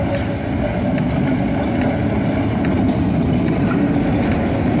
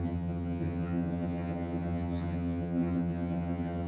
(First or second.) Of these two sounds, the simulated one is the second